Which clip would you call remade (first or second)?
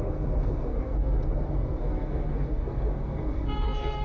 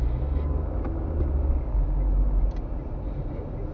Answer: first